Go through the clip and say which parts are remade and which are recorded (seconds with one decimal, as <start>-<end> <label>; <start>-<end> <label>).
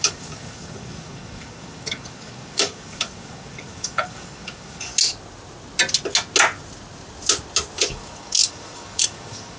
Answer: 0.0-4.9 remade; 4.9-7.9 recorded; 7.9-9.6 remade